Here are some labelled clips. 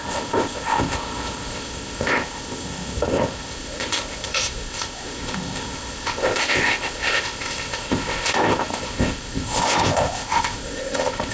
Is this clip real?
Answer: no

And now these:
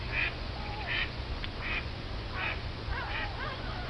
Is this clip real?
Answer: no